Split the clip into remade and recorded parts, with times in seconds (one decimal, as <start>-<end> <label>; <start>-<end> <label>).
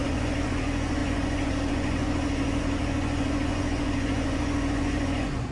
0.0-5.5 remade